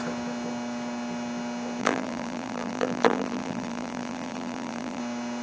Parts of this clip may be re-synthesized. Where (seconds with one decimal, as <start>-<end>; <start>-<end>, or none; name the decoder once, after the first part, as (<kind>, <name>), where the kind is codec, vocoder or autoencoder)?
1.8-5.0 (vocoder, BigVGAN v2)